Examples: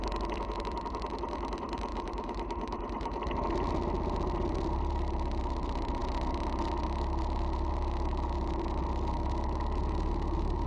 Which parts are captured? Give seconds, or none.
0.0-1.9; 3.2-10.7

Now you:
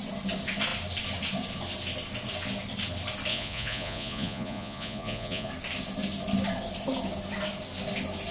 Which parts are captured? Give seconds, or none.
0.0-3.3; 5.5-8.3

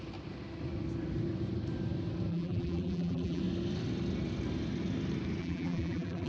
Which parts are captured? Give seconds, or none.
0.0-2.3; 3.4-5.4

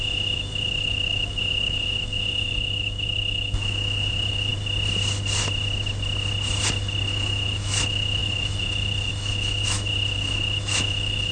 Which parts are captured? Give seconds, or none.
4.5-7.1

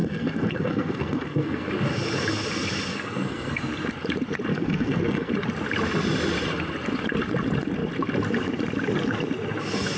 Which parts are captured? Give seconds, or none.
1.7-2.9; 3.6-4.5; 5.3-10.0